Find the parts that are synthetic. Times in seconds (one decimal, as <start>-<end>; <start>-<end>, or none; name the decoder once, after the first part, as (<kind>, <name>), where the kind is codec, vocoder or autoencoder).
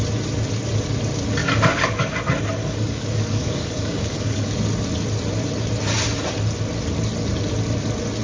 1.4-2.2 (codec, DAC); 2.6-4.5